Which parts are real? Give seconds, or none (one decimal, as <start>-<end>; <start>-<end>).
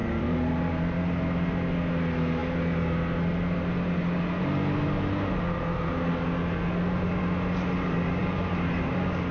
0.8-8.2; 8.9-9.3